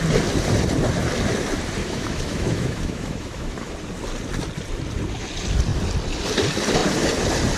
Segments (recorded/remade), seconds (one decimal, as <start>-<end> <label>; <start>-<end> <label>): 0.0-1.8 recorded; 1.8-3.7 remade; 3.7-7.6 recorded

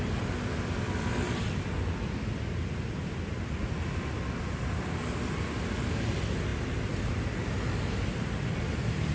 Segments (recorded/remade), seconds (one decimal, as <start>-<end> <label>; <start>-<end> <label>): 0.0-9.1 recorded

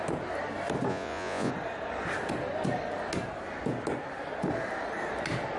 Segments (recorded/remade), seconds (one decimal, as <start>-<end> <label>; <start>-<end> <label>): 0.0-0.9 recorded; 0.9-1.5 remade; 1.5-5.6 recorded